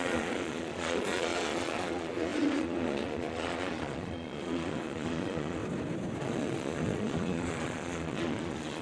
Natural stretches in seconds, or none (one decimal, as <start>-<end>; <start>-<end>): 5.6-6.2